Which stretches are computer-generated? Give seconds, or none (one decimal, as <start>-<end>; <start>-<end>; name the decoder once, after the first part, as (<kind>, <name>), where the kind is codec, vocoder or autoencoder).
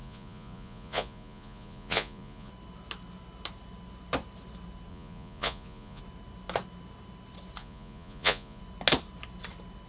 0.0-2.5 (vocoder, Vocos); 4.9-6.0; 7.6-8.6